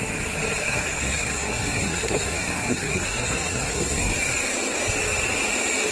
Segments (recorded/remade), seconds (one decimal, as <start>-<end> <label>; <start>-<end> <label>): 0.0-0.6 recorded; 0.6-4.1 remade; 4.1-5.9 recorded

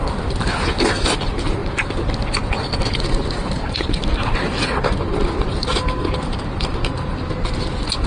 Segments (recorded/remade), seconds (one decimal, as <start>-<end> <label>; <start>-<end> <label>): 0.0-8.1 recorded

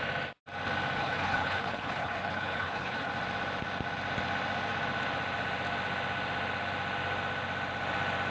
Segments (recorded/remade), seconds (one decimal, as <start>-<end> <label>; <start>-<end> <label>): 0.0-1.0 recorded; 1.0-3.1 remade; 3.1-8.3 recorded

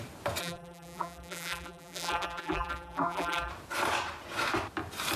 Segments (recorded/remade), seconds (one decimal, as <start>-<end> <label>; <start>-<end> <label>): 0.0-0.4 recorded; 0.4-3.5 remade; 3.5-5.2 recorded